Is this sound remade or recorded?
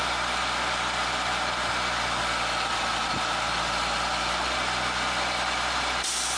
recorded